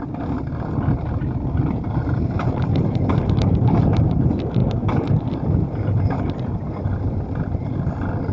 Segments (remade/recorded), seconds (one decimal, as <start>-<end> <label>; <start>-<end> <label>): 0.0-8.3 recorded